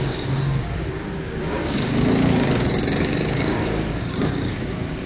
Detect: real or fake fake